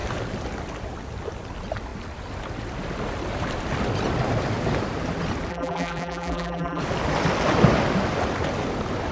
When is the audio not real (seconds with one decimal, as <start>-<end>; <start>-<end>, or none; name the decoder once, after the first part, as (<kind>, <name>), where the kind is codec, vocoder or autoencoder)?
5.5-6.8 (vocoder, BigVGAN v2)